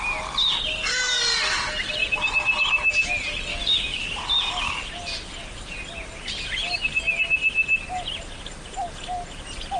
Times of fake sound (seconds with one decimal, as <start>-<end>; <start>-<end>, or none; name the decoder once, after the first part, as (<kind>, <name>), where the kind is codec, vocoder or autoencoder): 3.5-4.2 (autoencoder, DAC-VAE)